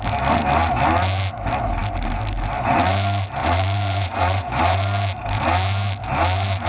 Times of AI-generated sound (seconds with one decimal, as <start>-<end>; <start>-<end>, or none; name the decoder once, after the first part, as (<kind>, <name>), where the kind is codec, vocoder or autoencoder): 3.4-4.6 (vocoder, Vocos)